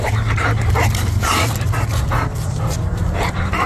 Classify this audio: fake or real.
real